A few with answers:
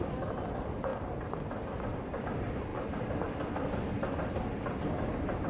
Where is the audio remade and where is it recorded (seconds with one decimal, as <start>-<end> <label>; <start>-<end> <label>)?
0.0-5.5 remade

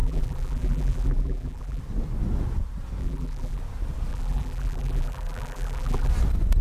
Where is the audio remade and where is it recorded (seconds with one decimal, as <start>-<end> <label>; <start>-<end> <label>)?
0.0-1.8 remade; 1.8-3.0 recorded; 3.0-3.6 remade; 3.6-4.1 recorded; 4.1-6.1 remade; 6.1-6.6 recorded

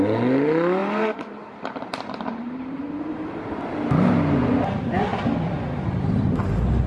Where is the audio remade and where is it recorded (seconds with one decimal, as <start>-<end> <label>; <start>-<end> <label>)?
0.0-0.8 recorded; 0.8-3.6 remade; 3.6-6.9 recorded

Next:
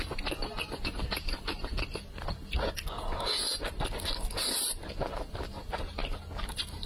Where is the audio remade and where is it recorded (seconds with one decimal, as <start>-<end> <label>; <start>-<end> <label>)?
0.0-1.7 remade; 1.7-5.3 recorded; 5.3-6.0 remade; 6.0-6.5 recorded; 6.5-6.9 remade

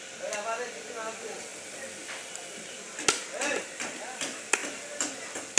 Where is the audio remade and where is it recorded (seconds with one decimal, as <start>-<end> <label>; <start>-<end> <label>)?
0.0-5.6 recorded

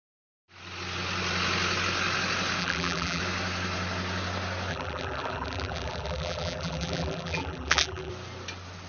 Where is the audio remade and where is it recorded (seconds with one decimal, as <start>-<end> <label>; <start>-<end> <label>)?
0.0-2.6 recorded; 2.6-3.2 remade; 3.2-4.7 recorded; 4.7-8.1 remade; 8.1-8.9 recorded